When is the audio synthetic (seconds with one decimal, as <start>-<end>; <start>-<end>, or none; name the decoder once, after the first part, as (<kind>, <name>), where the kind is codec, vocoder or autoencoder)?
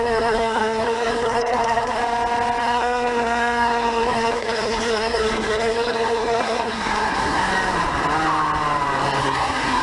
0.0-2.0 (codec, SNAC); 2.6-7.5; 9.2-9.8